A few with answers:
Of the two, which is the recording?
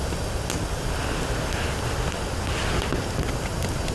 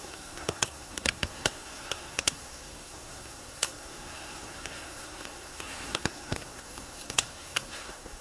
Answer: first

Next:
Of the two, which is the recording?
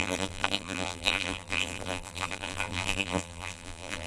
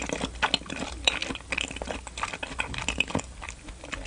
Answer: second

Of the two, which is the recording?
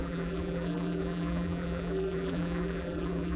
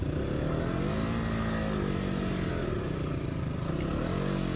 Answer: second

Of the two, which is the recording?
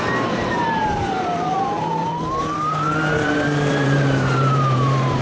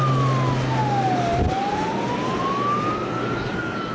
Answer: second